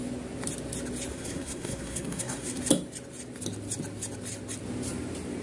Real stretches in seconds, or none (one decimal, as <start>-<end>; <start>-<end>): 0.0-1.1; 2.6-5.4